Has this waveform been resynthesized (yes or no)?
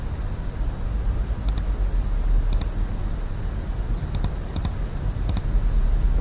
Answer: no